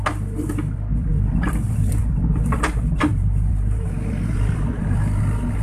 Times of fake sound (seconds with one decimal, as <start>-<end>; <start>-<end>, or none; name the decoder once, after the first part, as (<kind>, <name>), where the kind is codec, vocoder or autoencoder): none